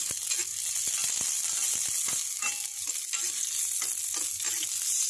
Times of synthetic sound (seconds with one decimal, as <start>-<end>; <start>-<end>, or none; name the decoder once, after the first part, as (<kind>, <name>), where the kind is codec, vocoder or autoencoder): none